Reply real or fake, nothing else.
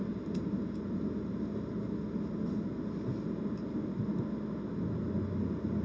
real